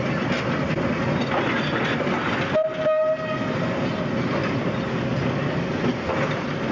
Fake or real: real